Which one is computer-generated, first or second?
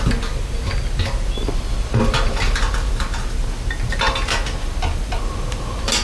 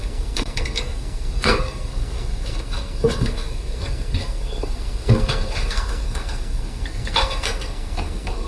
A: second